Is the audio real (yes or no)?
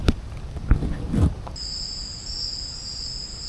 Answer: yes